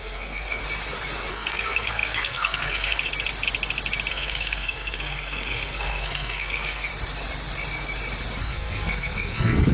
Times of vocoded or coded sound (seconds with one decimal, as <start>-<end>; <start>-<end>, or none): 0.0-0.6; 1.3-3.1; 4.1-6.9; 8.4-9.7